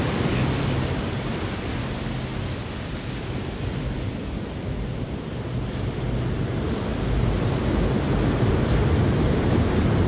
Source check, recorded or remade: recorded